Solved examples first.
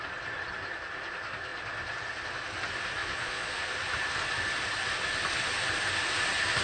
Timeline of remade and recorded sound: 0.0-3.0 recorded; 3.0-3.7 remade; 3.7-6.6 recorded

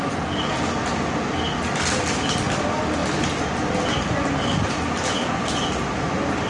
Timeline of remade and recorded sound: 0.0-6.5 recorded

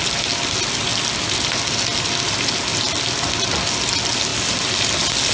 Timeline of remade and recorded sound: 0.0-5.3 recorded

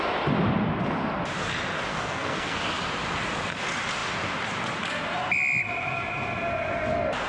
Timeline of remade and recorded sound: 0.0-1.9 recorded; 1.9-2.6 remade; 2.6-7.3 recorded

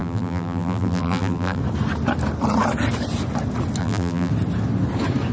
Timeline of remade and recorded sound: 0.0-1.6 remade; 1.6-3.8 recorded; 3.8-4.3 remade; 4.3-5.3 recorded

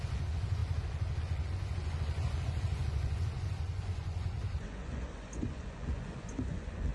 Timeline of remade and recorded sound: 0.0-6.9 remade

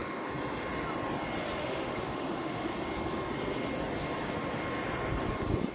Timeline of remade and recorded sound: 0.0-1.6 recorded; 1.6-2.7 remade; 2.7-5.7 recorded

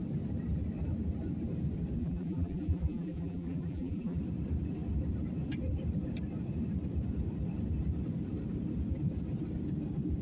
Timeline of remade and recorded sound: 0.0-2.0 recorded; 2.0-4.2 remade; 4.2-10.2 recorded